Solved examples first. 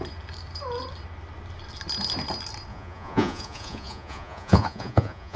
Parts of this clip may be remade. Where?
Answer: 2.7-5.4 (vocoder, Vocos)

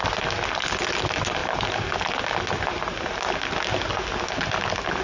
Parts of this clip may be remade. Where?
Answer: none